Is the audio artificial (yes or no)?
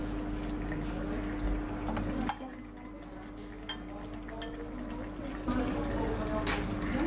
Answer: no